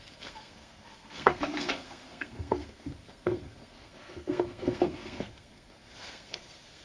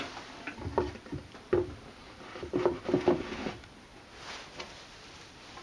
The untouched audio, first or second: second